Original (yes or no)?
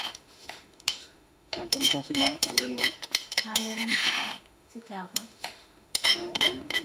no